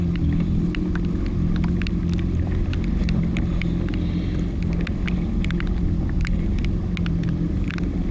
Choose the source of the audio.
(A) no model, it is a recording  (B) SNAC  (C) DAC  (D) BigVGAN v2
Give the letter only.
A